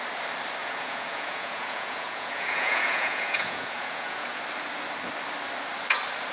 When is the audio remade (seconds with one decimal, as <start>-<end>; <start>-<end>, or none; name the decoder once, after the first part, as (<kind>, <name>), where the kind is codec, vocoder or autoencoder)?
0.6-4.4 (vocoder, Vocos)

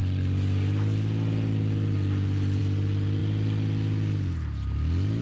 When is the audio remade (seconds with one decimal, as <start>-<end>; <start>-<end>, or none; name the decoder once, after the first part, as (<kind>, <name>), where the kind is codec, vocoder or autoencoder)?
none

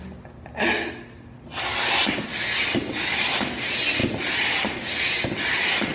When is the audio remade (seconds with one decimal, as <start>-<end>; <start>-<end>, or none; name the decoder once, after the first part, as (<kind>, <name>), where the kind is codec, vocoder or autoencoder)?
none

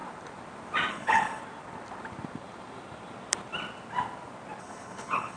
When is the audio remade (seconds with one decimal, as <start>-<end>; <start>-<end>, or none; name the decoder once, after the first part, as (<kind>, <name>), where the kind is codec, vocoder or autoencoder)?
0.9-1.4 (codec, HILCodec); 4.6-5.4